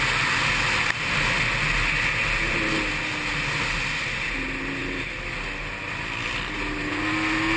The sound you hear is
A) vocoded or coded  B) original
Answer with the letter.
B